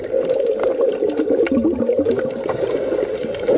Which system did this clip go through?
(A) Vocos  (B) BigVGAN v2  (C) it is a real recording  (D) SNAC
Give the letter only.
C